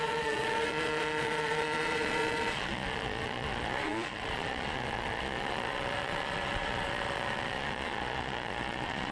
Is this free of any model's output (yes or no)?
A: no